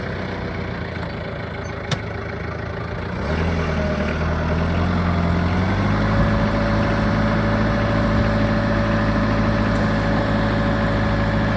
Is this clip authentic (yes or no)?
yes